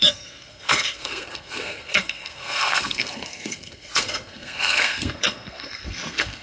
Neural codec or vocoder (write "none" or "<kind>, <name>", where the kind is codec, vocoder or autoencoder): codec, SNAC